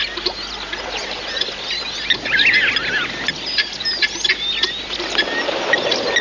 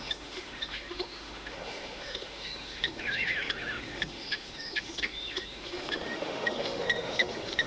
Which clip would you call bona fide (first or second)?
first